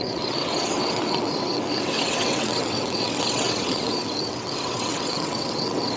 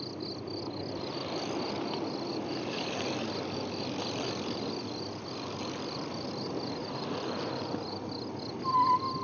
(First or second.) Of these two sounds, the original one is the second